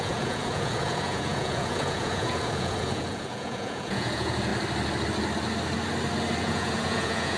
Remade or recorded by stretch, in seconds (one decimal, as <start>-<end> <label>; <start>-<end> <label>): 0.0-4.5 remade; 4.5-6.4 recorded; 6.4-7.4 remade